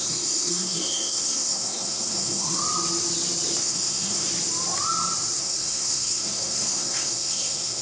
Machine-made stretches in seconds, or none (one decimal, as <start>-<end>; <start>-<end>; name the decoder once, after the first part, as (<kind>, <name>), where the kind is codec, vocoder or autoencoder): 0.0-2.6 (codec, SNAC); 3.6-4.3; 5.4-7.8